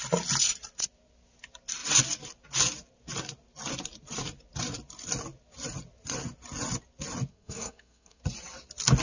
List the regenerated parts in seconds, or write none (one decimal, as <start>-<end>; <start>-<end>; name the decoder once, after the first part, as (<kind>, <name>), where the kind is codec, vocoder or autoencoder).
7.3-8.2 (codec, SNAC)